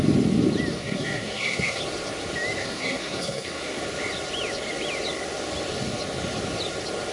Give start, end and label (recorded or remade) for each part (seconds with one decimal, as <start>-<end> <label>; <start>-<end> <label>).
0.0-0.8 recorded; 0.8-1.8 remade; 1.8-2.6 recorded; 2.6-3.8 remade; 3.8-7.1 recorded